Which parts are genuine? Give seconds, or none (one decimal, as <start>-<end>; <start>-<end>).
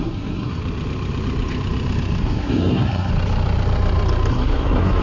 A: 0.6-2.2; 3.1-4.3